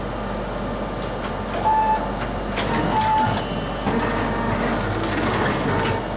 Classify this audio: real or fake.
real